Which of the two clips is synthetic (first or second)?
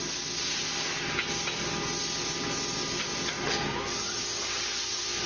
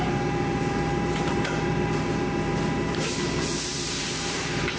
second